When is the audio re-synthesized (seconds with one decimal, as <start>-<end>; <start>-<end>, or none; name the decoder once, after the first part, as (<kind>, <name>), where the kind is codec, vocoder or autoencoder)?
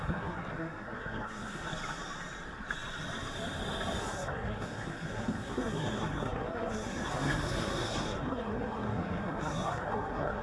0.0-1.7 (codec, SNAC); 4.0-10.4